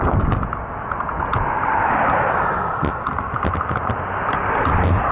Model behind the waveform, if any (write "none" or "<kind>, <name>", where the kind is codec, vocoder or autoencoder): none